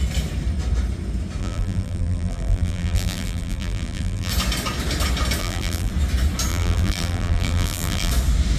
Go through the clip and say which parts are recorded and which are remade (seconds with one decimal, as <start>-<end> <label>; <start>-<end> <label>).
0.0-1.4 recorded; 1.4-4.3 remade; 4.3-5.4 recorded; 5.4-5.9 remade; 5.9-6.5 recorded; 6.5-8.1 remade; 8.1-8.6 recorded